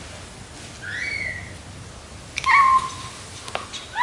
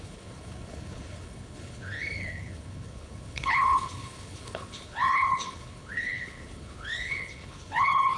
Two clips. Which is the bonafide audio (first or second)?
first